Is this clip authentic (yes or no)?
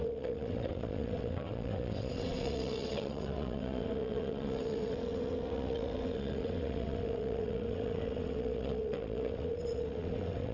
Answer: no